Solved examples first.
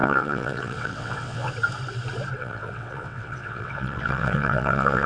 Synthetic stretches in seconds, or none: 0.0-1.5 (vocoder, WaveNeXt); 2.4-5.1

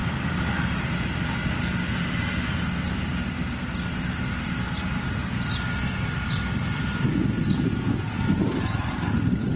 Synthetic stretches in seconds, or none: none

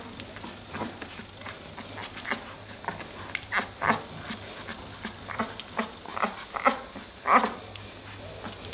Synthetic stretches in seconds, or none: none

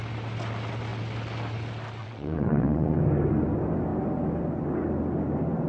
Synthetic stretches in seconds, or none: 2.0-3.0 (vocoder, WaveNeXt)

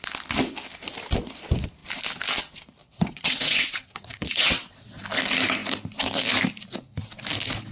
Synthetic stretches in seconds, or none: 2.8-5.0 (vocoder, WaveNeXt)

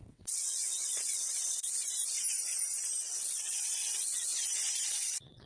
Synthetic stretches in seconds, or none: 0.0-1.7 (vocoder, WaveNeXt); 3.0-4.3; 4.9-5.5